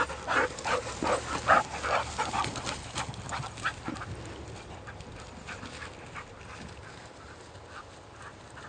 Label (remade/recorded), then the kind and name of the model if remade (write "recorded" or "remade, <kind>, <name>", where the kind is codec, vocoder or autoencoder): recorded